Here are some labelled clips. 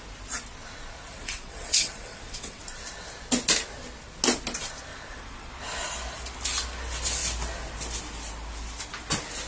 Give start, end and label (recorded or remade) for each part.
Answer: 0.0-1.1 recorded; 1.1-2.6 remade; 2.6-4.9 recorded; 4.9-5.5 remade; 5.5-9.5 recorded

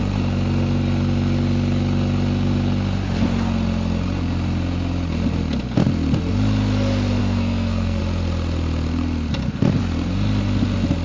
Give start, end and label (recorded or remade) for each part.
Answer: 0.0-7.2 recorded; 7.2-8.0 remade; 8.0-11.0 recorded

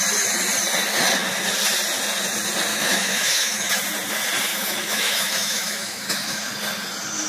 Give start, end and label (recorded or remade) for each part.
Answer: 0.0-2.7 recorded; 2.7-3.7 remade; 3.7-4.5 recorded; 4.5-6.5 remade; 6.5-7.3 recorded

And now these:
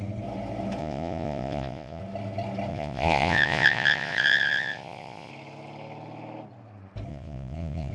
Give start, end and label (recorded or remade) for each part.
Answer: 0.0-0.8 recorded; 0.8-2.0 remade; 2.0-2.7 recorded; 2.7-5.3 remade; 5.3-7.1 recorded; 7.1-7.9 remade